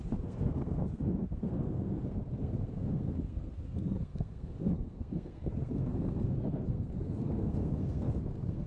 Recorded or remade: remade